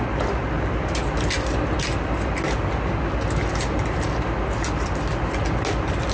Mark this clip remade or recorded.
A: recorded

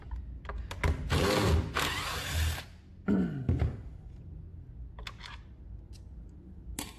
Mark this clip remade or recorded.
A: recorded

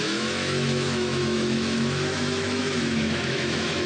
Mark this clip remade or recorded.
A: remade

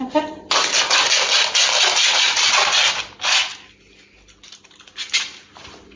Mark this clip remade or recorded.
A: recorded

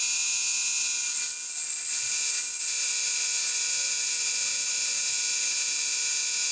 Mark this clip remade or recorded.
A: recorded